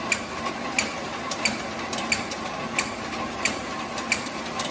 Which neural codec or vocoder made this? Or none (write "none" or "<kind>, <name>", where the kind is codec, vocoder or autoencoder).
none